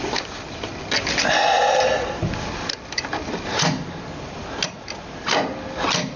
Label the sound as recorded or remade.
recorded